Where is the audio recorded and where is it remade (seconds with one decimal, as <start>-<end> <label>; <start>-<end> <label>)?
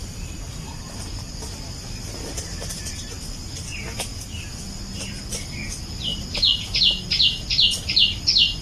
0.0-3.1 remade; 3.1-8.6 recorded